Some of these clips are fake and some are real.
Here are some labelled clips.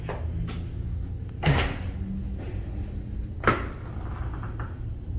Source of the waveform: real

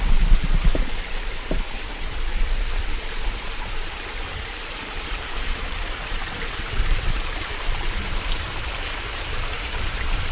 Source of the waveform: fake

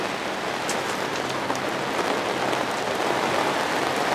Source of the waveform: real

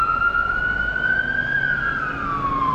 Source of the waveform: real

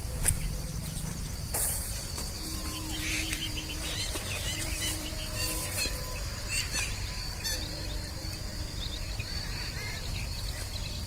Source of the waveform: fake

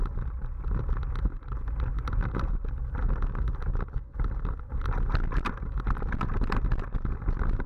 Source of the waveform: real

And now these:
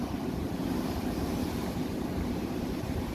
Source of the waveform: fake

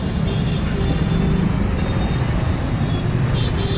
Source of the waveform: real